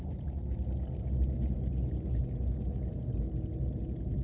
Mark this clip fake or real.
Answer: real